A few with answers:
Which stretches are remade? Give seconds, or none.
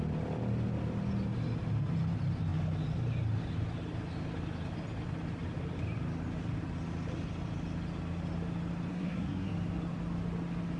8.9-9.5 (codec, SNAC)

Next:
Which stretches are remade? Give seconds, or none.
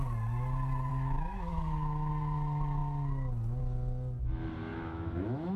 0.9-2.1 (autoencoder, DAC-VAE); 4.7-5.6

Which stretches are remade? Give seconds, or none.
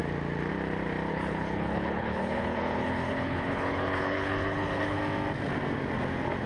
1.1-5.0 (codec, HILCodec)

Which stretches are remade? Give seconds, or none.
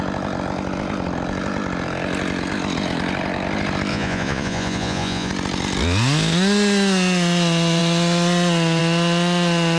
3.9-5.3 (vocoder, Vocos)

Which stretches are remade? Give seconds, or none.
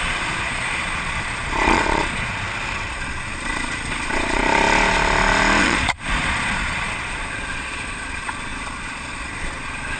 0.0-2.3 (vocoder, Vocos); 2.9-4.4; 5.6-10.0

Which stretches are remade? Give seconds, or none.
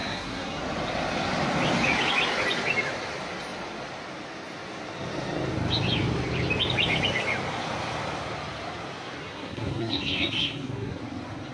0.0-0.6 (codec, SNAC); 9.2-11.0